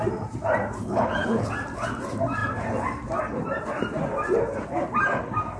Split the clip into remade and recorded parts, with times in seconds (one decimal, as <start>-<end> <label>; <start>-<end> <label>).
0.0-0.8 recorded; 0.8-1.5 remade; 1.5-5.6 recorded